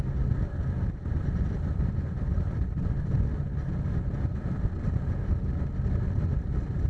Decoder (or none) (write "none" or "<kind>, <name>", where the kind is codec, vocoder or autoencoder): none